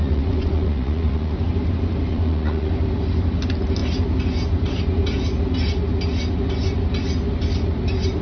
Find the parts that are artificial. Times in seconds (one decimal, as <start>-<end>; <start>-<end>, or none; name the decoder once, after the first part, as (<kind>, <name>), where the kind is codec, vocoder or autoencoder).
0.0-1.4 (vocoder, Vocos); 2.1-2.7